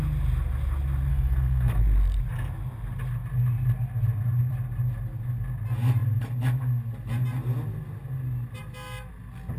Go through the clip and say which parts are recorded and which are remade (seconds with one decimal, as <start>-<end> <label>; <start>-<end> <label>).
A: 0.0-1.1 recorded; 1.1-1.8 remade; 1.8-9.6 recorded